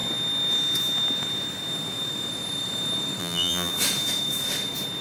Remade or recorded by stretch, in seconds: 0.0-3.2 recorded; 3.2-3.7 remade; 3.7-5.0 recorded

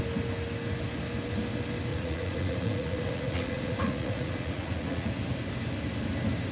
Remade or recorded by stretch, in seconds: 0.0-1.9 recorded; 1.9-5.1 remade; 5.1-6.5 recorded

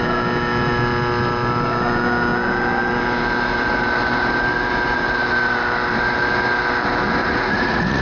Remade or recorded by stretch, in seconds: 0.0-7.2 recorded; 7.2-8.0 remade

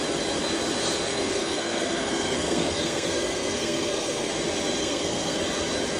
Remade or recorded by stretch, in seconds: 0.0-1.1 recorded; 1.1-4.3 remade; 4.3-4.8 recorded; 4.8-5.4 remade; 5.4-6.0 recorded

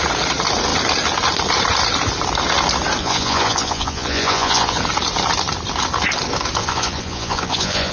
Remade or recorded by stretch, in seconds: 0.0-3.0 recorded; 3.0-4.8 remade; 4.8-6.6 recorded; 6.6-7.9 remade

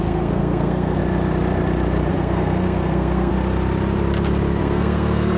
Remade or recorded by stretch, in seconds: 0.0-1.0 remade; 1.0-2.1 recorded; 2.1-3.3 remade; 3.3-4.6 recorded; 4.6-5.4 remade

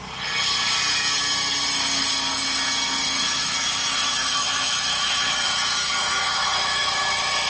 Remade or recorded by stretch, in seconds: 0.0-3.0 recorded; 3.0-7.5 remade

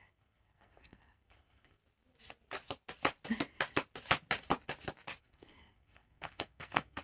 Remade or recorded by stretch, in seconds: 0.0-1.8 remade; 1.8-5.2 recorded; 5.2-7.0 remade